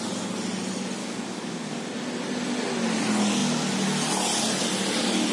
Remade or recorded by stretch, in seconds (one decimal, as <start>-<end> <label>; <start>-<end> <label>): 0.0-1.0 recorded; 1.0-1.8 remade; 1.8-5.3 recorded